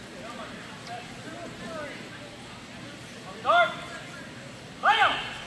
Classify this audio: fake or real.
real